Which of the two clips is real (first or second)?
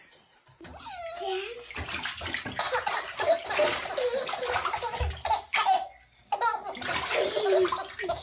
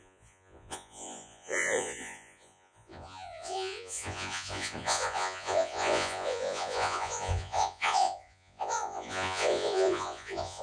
first